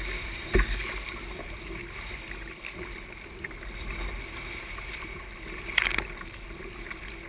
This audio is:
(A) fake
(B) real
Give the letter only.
B